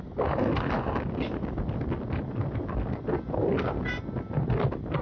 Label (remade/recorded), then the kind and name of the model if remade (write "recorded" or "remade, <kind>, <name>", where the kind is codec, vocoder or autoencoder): recorded